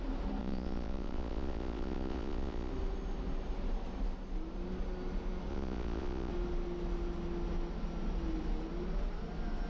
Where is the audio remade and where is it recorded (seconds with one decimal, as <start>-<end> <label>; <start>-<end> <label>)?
0.0-0.4 recorded; 0.4-2.7 remade; 2.7-5.5 recorded; 5.5-6.3 remade; 6.3-9.7 recorded